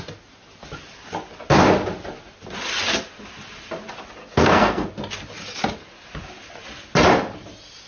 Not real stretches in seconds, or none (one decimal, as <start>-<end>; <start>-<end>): 4.2-4.9